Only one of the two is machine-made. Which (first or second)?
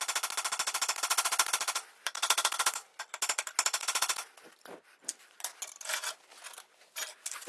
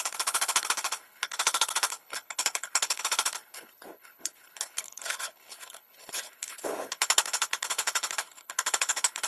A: second